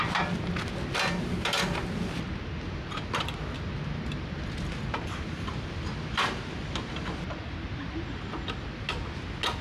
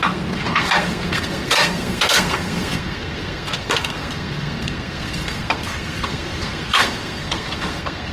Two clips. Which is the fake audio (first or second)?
second